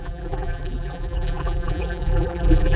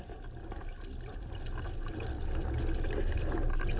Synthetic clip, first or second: first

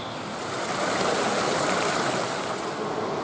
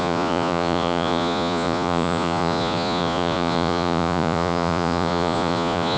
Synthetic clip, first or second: second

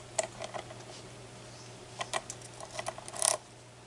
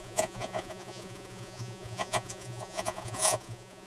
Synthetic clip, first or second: second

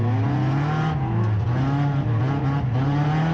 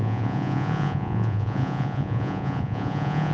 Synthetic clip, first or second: second